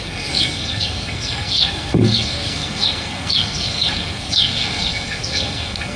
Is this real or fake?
fake